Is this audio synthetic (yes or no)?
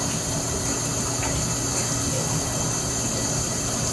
no